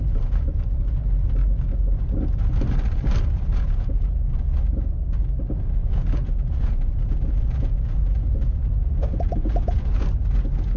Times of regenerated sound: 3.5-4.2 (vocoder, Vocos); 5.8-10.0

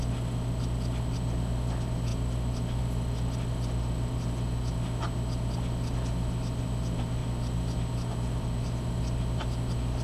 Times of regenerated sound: none

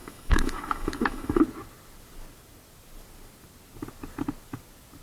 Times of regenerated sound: 0.0-1.4 (autoencoder, DAC-VAE)

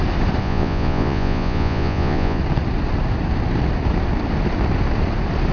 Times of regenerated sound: 0.4-2.4 (vocoder, Vocos)

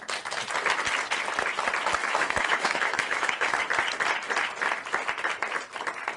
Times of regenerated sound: 2.0-3.6 (autoencoder, DAC-VAE)

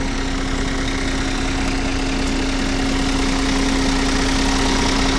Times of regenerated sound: none

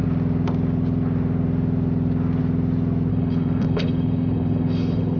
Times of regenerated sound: 3.1-5.2 (codec, HILCodec)

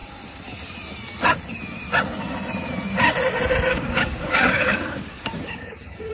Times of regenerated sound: 3.7-6.1 (codec, DAC)